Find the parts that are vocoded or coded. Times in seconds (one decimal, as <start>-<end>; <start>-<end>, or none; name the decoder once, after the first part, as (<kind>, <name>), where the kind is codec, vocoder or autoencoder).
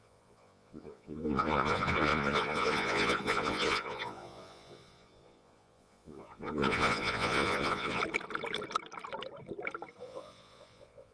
0.0-8.0 (vocoder, Vocos); 10.0-11.1